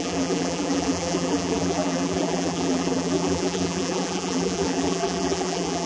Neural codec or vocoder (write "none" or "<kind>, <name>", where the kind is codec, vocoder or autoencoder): vocoder, BigVGAN v2